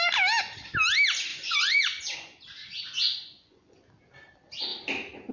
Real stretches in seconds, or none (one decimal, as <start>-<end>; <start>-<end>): 0.0-1.3; 3.9-5.3

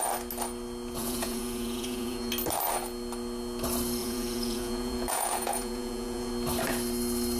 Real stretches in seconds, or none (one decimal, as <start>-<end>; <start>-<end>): 0.0-1.0; 2.3-4.0; 6.3-7.4

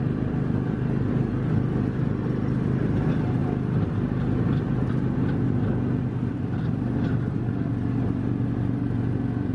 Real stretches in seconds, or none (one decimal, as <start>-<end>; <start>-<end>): 0.0-9.5

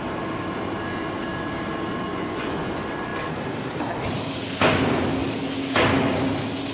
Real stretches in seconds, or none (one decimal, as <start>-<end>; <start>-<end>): 0.0-2.1; 2.7-6.7

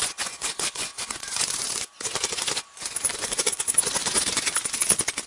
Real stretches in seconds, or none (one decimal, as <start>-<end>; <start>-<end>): none